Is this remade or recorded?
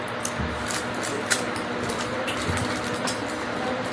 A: recorded